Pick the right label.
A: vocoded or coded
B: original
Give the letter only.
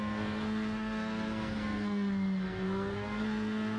A